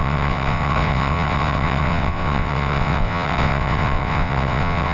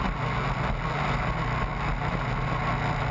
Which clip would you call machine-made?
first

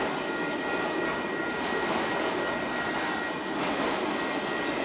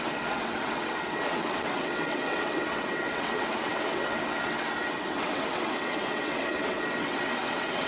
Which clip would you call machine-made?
second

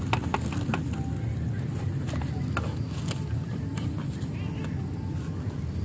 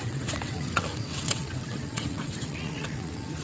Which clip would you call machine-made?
second